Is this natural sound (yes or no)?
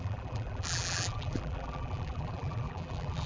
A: no